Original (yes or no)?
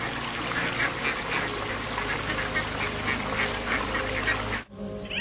yes